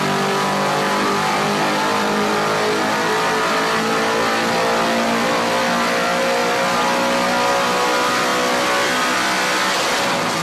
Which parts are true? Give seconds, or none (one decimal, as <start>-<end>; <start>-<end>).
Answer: 0.0-6.4; 7.5-10.4